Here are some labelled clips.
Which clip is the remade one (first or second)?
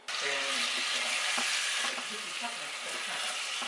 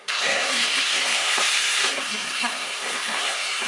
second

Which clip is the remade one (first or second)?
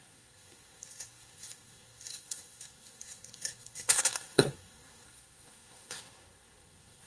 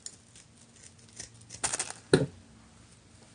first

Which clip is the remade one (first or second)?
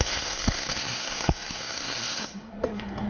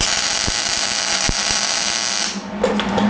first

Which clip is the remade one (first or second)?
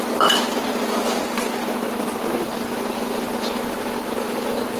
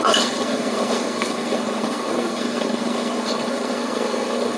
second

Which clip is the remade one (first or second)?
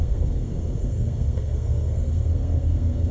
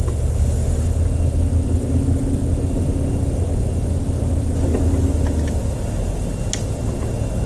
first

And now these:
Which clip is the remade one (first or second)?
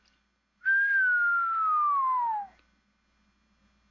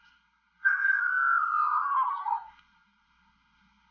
second